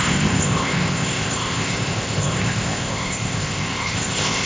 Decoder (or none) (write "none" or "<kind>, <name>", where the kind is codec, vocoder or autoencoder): codec, ZipCodec